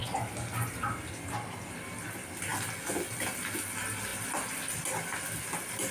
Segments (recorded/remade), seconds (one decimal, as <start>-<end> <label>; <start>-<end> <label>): 0.0-5.9 recorded